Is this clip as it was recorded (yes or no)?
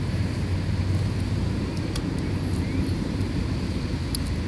yes